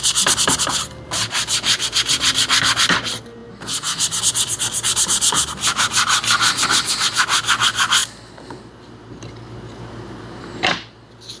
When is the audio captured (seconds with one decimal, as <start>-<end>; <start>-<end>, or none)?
0.0-11.4